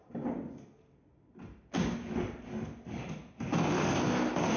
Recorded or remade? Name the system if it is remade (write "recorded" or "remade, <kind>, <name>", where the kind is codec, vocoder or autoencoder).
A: recorded